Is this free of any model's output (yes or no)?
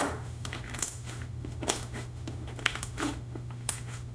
no